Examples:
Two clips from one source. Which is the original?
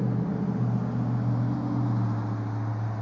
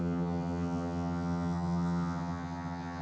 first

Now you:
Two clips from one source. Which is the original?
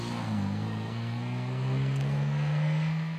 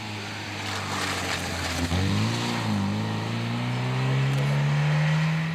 second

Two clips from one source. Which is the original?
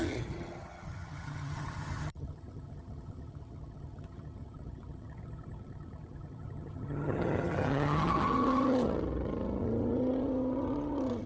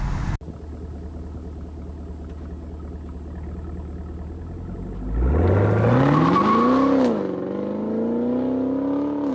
second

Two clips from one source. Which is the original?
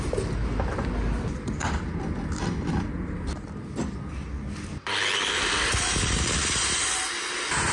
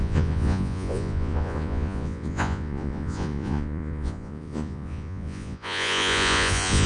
first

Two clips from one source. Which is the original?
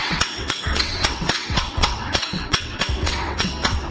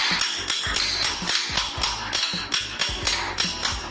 second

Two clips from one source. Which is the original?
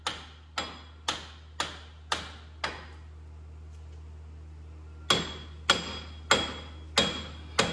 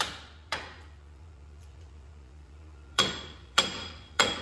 first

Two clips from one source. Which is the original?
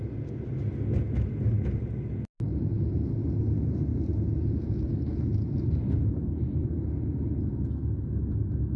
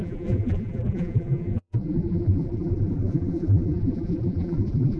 first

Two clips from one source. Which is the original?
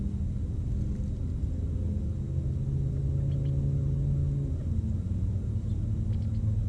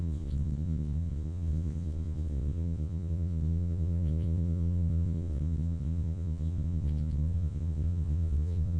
first